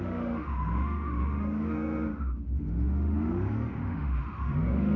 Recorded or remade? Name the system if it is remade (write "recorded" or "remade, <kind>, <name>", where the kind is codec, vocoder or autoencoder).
remade, autoencoder, DAC-VAE